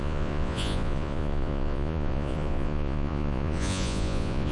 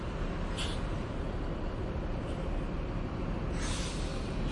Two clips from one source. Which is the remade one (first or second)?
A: first